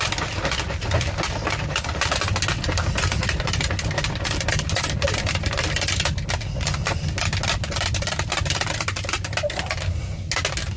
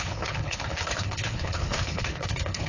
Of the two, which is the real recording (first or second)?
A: first